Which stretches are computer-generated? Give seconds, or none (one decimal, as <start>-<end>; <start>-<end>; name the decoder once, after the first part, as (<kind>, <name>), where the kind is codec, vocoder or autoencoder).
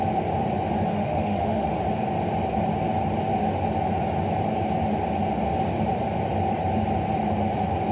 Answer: 0.9-1.7 (autoencoder, DAC-VAE)